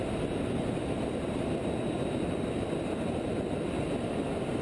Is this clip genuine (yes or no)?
yes